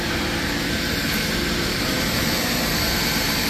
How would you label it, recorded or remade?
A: remade